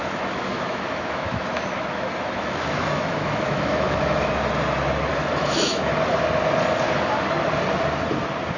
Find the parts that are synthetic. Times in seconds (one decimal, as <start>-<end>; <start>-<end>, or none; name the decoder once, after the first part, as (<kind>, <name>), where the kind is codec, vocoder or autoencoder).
0.0-4.3 (autoencoder, DAC-VAE); 5.1-5.9